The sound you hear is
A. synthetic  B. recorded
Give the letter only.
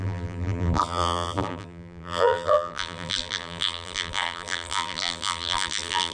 A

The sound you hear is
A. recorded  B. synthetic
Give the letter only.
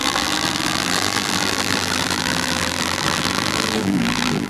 B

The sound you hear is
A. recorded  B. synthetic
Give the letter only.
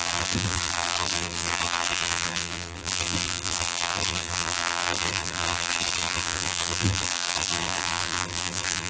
B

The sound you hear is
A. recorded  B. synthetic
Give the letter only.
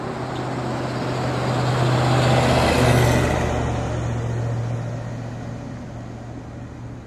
A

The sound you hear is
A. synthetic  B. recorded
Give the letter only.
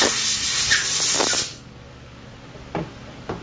B